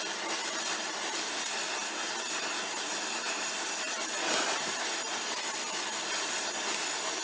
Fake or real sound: real